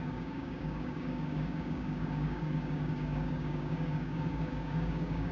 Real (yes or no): no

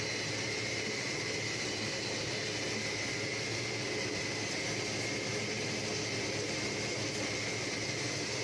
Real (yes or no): yes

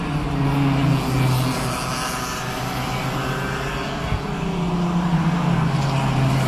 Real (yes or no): yes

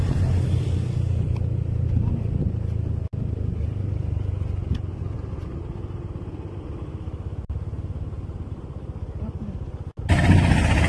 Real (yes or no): yes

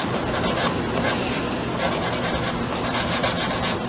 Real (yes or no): yes